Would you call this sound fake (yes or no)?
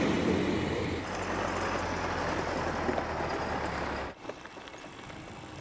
no